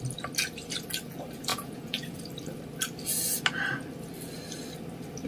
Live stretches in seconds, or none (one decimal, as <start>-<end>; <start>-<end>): 0.0-1.5; 2.2-5.3